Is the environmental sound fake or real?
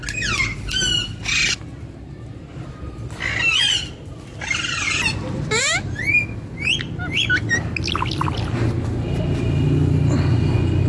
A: real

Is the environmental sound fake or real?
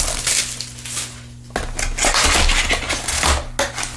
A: real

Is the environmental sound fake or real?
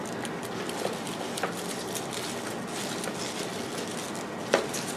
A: real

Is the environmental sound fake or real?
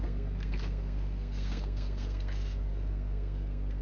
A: fake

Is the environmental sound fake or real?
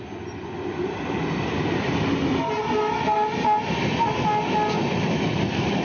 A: real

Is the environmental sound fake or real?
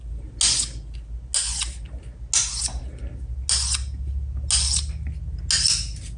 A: real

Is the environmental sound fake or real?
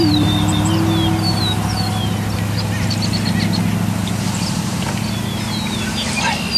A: real